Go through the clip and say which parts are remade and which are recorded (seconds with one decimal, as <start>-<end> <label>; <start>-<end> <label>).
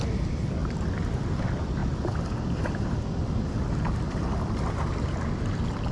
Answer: 0.0-0.6 recorded; 0.6-1.4 remade; 1.4-5.9 recorded